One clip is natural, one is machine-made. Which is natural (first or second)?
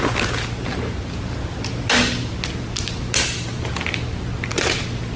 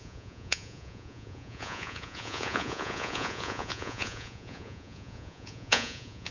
first